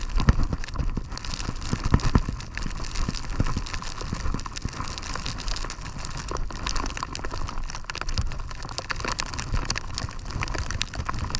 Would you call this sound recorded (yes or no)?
yes